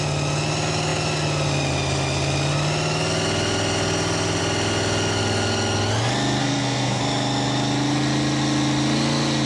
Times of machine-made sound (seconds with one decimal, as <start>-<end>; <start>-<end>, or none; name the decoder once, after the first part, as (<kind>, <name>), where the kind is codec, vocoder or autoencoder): 6.4-7.0 (codec, SNAC)